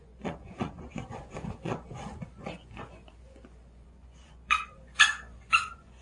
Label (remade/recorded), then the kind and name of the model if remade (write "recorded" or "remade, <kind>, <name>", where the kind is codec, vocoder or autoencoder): remade, vocoder, Vocos